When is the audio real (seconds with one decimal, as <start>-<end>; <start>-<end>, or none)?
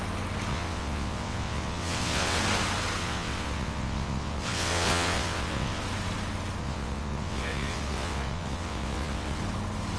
0.0-0.5; 2.4-3.0; 5.8-6.6; 9.4-10.0